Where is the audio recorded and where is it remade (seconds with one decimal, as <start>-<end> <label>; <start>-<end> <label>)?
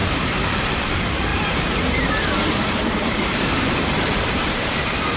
0.0-0.6 recorded; 0.6-5.2 remade